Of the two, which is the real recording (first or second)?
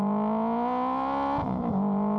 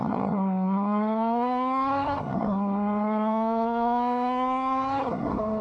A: first